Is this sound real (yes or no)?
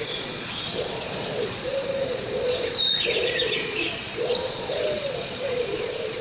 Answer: no